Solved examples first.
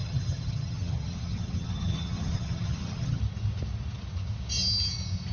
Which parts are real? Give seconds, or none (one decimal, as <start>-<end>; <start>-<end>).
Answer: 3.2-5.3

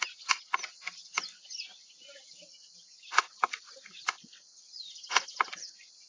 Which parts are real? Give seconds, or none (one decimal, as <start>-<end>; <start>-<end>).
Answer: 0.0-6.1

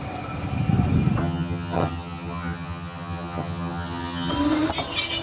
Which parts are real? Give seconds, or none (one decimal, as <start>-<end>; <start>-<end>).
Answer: 0.0-1.2; 4.3-5.2